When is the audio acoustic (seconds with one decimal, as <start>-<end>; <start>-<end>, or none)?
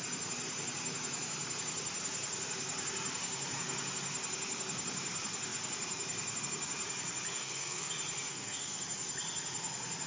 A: 0.0-7.4; 7.9-8.3; 8.8-10.1